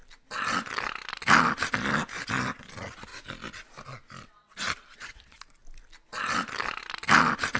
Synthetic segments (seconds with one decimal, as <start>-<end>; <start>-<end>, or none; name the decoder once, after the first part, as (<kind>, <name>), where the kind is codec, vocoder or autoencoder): none